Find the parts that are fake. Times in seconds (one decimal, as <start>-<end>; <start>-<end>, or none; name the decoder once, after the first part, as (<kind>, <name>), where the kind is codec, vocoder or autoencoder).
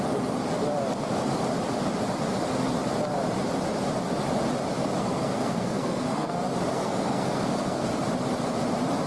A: 5.0-6.3 (codec, SNAC); 6.7-7.9